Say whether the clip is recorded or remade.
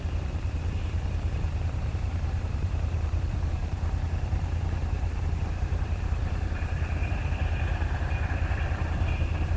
remade